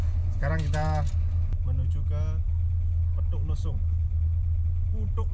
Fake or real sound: real